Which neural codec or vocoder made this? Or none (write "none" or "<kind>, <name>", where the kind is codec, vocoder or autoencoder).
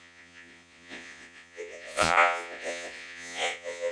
vocoder, Vocos